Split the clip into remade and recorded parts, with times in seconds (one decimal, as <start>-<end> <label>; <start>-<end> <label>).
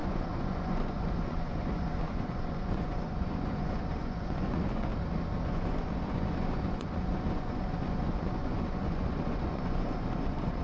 0.0-4.9 remade; 4.9-5.5 recorded; 5.5-10.6 remade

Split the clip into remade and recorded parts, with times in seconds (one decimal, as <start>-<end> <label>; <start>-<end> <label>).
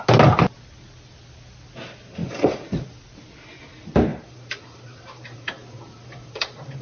0.0-2.2 recorded; 2.2-3.0 remade; 3.0-4.1 recorded; 4.1-6.8 remade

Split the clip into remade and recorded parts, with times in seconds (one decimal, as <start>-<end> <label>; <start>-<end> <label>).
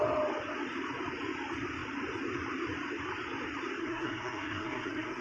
0.0-3.8 recorded; 3.8-5.2 remade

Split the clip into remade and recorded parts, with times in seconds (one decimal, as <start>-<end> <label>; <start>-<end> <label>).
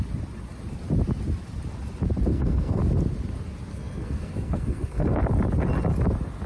0.0-2.3 recorded; 2.3-2.8 remade; 2.8-3.7 recorded; 3.7-5.2 remade; 5.2-6.5 recorded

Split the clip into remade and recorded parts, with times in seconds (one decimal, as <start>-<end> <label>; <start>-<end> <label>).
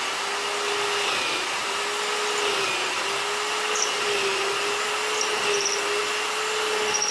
0.0-7.1 recorded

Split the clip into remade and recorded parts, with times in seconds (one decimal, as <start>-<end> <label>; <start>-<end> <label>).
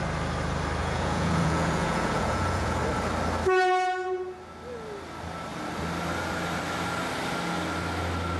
0.0-0.8 recorded; 0.8-2.8 remade; 2.8-8.4 recorded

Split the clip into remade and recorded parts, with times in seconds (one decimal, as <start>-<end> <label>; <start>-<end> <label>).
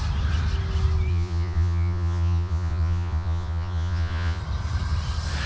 0.0-1.1 recorded; 1.1-4.4 remade; 4.4-5.5 recorded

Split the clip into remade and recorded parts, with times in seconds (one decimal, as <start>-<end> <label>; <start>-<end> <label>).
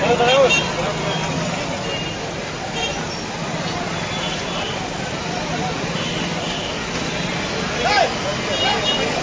0.0-9.2 recorded